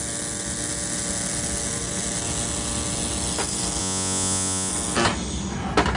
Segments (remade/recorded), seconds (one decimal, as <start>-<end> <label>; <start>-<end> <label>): 0.0-3.8 recorded; 3.8-4.7 remade; 4.7-6.0 recorded